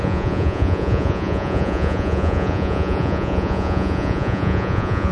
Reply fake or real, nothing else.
fake